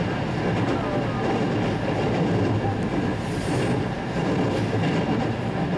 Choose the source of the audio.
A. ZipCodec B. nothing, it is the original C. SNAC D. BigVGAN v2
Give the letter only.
B